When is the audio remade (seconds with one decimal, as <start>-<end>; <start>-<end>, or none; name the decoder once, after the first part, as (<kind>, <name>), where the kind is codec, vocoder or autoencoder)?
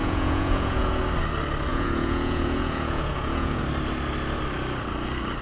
0.0-1.0 (vocoder, Vocos); 1.7-3.6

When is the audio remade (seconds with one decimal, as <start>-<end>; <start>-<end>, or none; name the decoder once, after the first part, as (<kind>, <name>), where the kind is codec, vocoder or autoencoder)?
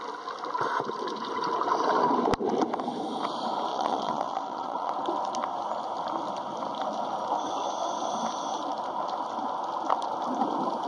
3.7-4.9 (vocoder, Vocos)